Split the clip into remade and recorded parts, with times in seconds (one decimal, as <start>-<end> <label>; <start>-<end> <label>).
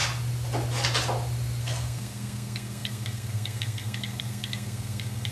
0.0-1.6 recorded; 1.6-5.3 remade